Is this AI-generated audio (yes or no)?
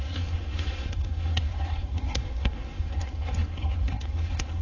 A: yes